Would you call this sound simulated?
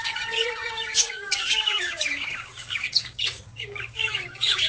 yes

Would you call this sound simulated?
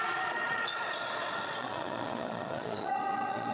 yes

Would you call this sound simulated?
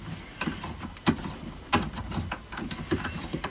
no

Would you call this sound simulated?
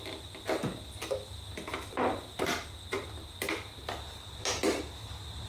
no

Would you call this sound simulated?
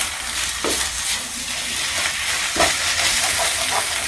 yes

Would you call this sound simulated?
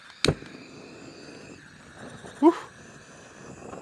no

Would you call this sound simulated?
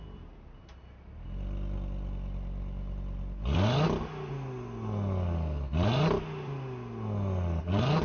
no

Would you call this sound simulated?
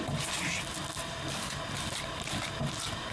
no